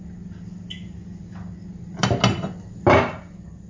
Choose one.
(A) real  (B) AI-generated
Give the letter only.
A